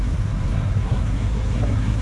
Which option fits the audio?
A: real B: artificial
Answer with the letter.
B